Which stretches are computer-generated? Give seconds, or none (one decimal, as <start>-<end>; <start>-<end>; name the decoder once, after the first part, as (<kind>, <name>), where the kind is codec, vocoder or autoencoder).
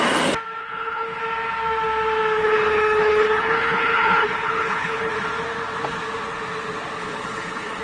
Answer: 0.6-1.2 (codec, HILCodec); 2.4-5.1; 7.0-7.8